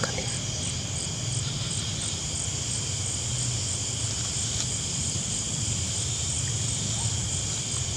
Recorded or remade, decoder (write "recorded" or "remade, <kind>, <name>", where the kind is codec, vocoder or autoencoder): remade, vocoder, BigVGAN v2